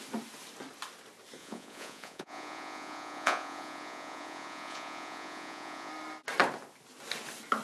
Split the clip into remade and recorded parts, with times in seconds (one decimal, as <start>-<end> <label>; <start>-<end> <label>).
0.0-1.4 recorded; 1.4-5.9 remade; 5.9-7.6 recorded